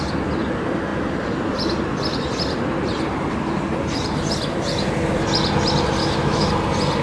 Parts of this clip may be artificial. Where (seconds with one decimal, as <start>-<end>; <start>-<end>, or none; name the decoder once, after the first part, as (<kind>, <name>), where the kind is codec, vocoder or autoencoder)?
6.0-6.5 (autoencoder, DAC-VAE)